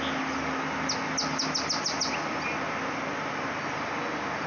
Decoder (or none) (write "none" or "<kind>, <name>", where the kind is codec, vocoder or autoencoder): none